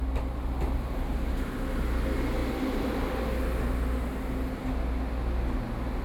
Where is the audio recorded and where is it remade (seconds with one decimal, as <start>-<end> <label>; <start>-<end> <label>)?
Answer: 0.0-6.0 recorded